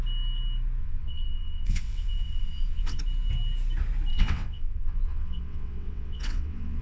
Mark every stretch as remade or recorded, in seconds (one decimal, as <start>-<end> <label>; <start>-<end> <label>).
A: 0.0-0.8 recorded; 0.8-3.0 remade; 3.0-4.1 recorded; 4.1-6.8 remade